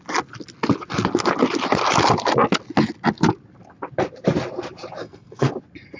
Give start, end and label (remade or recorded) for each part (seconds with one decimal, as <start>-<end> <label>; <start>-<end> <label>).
0.0-5.0 recorded; 5.0-5.5 remade; 5.5-6.0 recorded